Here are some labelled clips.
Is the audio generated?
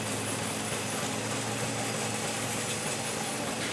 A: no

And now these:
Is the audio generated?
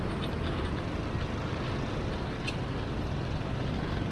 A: no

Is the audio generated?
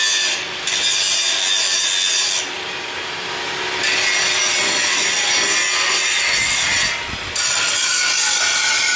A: no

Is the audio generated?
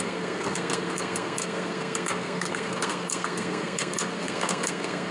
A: yes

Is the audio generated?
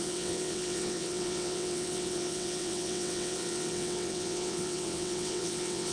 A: yes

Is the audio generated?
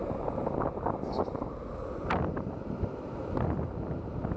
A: no